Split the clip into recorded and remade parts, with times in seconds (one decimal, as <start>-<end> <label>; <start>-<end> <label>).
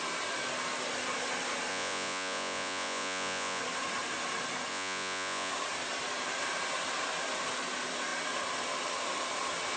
0.0-1.7 recorded; 1.7-3.6 remade; 3.6-4.7 recorded; 4.7-5.5 remade; 5.5-9.8 recorded